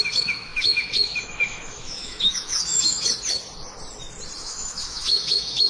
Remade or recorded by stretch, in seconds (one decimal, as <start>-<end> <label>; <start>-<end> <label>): 0.0-3.1 remade; 3.1-4.4 recorded; 4.4-5.7 remade